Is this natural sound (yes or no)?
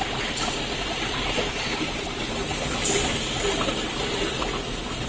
yes